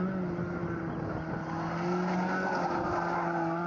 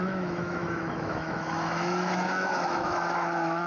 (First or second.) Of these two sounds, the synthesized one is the second